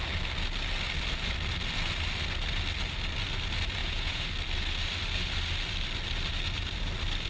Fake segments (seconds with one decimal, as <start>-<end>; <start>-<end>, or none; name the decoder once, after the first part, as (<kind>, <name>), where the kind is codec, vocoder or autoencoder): 3.8-4.3 (vocoder, Vocos)